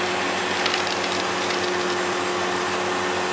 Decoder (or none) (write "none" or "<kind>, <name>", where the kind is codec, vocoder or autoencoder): none